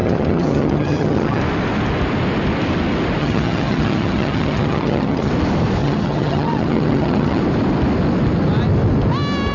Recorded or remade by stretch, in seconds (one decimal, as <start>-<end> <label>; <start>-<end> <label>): 0.0-1.4 remade; 1.4-3.2 recorded; 3.2-5.3 remade; 5.3-5.8 recorded; 5.8-7.4 remade; 7.4-9.5 recorded